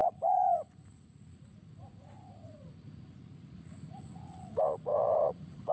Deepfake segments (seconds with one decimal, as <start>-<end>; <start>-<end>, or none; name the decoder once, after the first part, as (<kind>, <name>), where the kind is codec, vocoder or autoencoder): 0.0-5.7 (vocoder, Vocos)

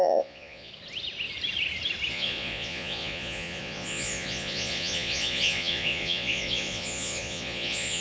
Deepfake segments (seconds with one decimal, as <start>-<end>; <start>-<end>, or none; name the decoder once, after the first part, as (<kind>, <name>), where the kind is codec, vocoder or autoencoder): 0.0-0.7 (vocoder, Vocos); 2.1-8.0

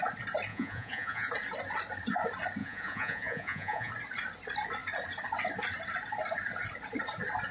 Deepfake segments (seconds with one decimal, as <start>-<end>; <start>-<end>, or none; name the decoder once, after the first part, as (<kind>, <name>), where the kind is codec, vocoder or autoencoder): 0.5-1.3 (vocoder, Vocos); 2.6-3.9

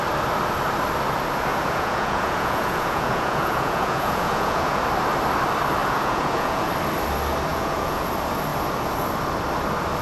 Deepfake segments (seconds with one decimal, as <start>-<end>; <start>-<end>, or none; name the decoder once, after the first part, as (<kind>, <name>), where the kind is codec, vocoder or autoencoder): 1.5-4.8 (vocoder, Vocos); 5.8-6.7; 7.5-8.1